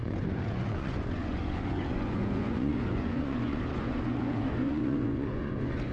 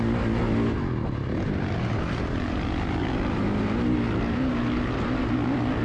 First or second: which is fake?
first